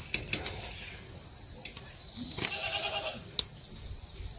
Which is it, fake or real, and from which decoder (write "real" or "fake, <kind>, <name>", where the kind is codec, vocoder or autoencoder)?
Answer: real